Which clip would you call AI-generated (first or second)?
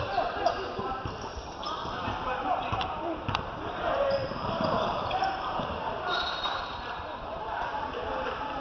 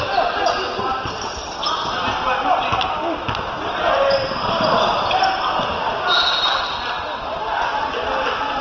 first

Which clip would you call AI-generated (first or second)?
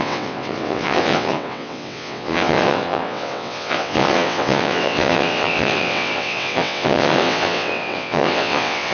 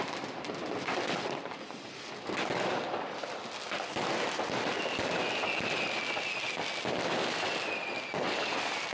first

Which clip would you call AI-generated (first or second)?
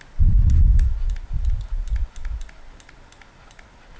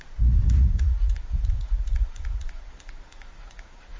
second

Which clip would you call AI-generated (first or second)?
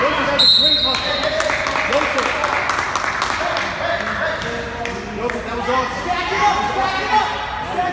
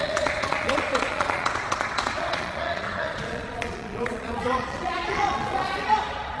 second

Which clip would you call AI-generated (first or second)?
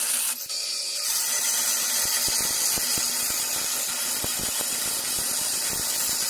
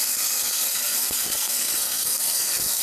second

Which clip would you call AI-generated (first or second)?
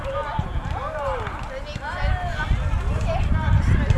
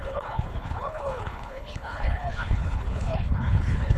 second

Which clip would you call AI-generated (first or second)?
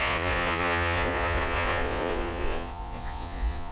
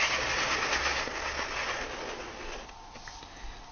first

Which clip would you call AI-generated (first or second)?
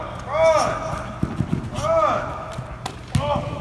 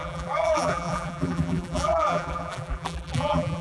second